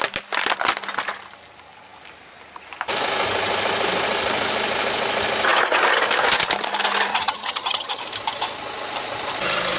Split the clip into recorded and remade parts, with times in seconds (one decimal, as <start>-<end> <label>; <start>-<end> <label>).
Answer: 0.0-7.1 recorded; 7.1-8.0 remade; 8.0-9.8 recorded